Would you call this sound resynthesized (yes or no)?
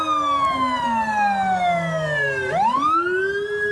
no